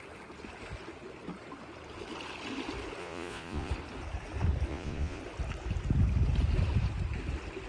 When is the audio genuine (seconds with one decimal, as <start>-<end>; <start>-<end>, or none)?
0.0-3.0; 3.7-4.7; 5.2-7.7